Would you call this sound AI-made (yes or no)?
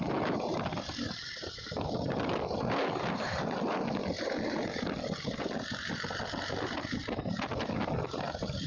no